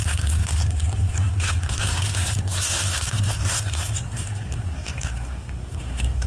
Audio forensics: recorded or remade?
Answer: remade